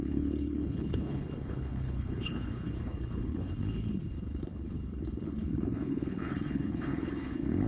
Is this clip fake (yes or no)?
yes